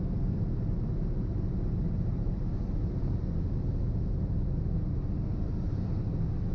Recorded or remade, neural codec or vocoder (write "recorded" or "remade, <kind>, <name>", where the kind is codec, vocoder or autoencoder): recorded